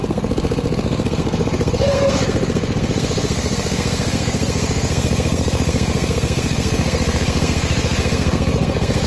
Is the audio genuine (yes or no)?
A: no